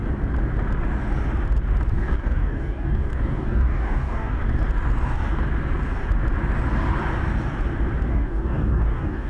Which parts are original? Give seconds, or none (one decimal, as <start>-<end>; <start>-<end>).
0.0-1.9; 4.4-8.1